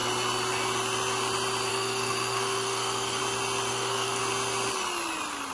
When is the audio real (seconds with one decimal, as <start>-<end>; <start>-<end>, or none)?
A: 0.0-1.7; 3.2-3.7; 4.2-5.5